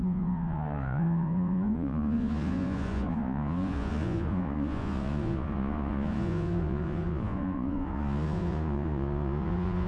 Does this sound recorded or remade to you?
remade